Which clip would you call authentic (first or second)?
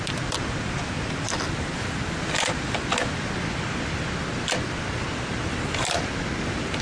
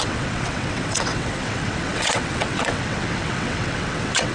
first